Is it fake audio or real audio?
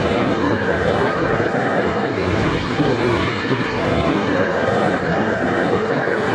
fake